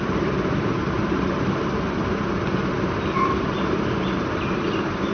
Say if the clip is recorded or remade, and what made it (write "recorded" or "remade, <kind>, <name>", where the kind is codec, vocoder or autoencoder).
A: recorded